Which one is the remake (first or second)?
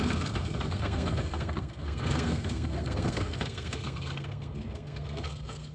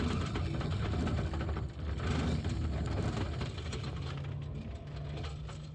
first